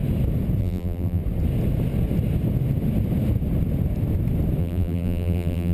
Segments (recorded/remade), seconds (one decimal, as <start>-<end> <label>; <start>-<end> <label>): 0.0-0.6 recorded; 0.6-1.2 remade; 1.2-4.6 recorded; 4.6-5.7 remade